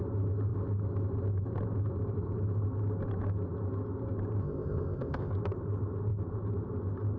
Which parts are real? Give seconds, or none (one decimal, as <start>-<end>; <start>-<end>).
0.0-4.4; 5.3-7.2